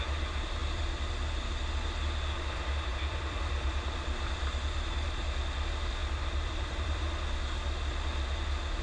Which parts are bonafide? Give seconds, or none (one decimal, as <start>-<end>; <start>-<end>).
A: 0.0-0.6; 1.1-2.9; 5.2-6.0; 7.3-8.8